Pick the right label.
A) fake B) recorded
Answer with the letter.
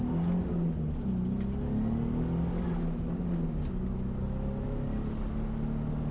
B